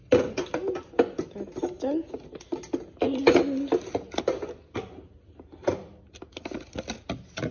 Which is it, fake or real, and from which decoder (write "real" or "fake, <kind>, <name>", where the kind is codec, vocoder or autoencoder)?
real